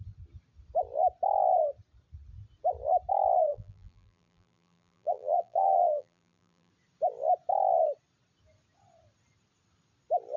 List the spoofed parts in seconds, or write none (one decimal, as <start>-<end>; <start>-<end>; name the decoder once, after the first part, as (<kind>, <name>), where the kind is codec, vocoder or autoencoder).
3.5-6.7 (vocoder, BigVGAN v2)